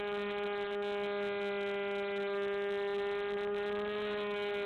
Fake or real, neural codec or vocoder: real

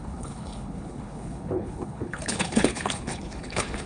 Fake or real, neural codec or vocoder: fake, codec, HILCodec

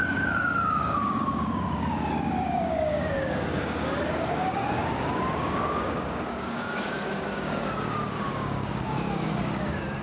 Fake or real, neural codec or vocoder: fake, codec, DAC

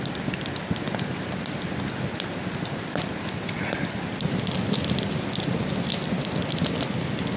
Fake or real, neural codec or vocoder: real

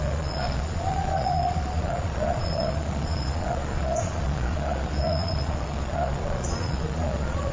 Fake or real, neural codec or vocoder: fake, vocoder, Vocos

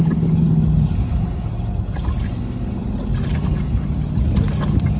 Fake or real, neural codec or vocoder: real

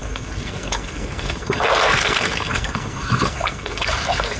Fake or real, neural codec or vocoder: fake, codec, SNAC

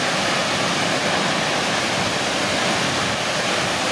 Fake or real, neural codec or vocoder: real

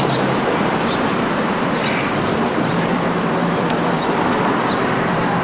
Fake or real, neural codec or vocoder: fake, vocoder, BigVGAN v2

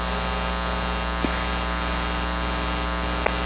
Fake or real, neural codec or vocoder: real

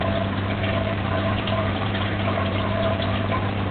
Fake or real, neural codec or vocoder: fake, vocoder, BigVGAN v2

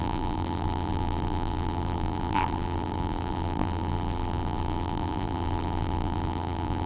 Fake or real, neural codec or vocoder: fake, vocoder, BigVGAN v2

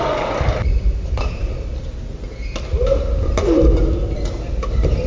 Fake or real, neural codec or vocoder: real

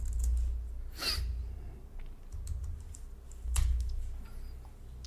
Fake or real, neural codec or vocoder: real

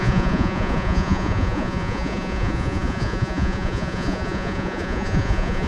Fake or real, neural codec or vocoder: fake, vocoder, Vocos